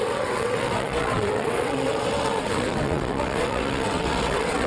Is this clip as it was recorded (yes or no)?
no